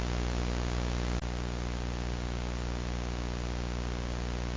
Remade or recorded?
recorded